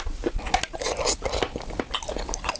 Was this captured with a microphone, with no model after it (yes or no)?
yes